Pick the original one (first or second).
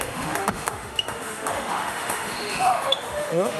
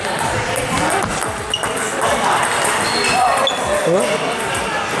second